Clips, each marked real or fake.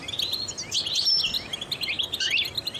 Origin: real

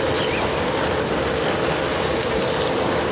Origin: real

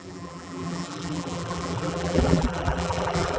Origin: fake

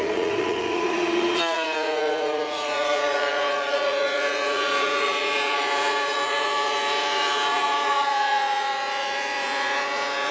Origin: fake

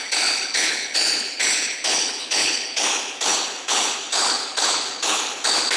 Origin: fake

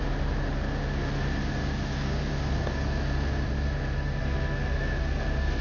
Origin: real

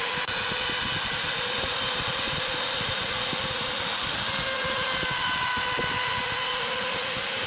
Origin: real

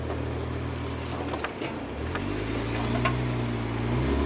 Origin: real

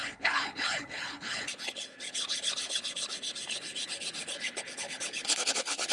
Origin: fake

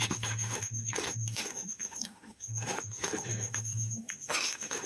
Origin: fake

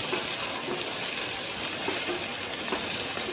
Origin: real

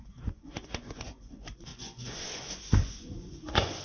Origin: fake